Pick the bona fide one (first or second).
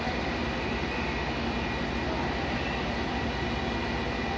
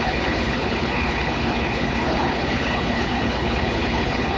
first